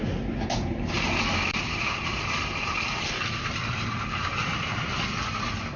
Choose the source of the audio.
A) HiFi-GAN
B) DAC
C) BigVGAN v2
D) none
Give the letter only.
C